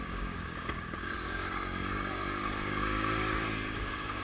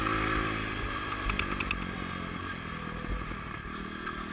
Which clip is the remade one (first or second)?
first